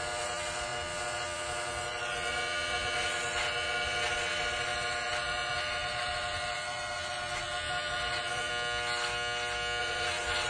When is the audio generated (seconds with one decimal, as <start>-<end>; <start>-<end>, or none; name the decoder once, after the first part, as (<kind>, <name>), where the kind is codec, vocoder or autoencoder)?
0.0-8.5 (vocoder, Vocos); 9.8-10.5